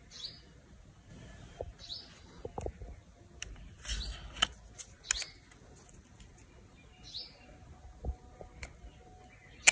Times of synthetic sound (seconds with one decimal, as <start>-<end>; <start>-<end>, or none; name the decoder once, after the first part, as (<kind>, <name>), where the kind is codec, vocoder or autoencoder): none